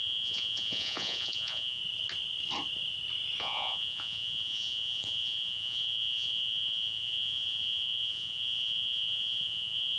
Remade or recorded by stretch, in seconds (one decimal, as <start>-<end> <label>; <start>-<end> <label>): 0.0-1.8 remade; 1.8-3.4 recorded; 3.4-10.0 remade